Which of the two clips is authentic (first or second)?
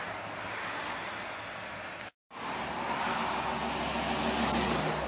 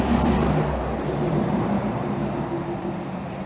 first